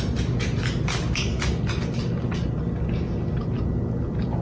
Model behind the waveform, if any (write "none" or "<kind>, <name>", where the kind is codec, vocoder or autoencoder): none